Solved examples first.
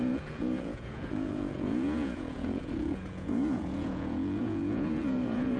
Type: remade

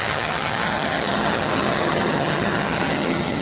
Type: remade